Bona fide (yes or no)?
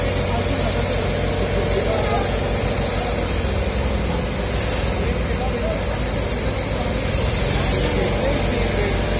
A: yes